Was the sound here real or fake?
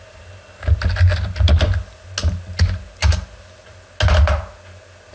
real